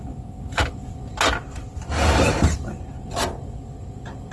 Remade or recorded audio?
recorded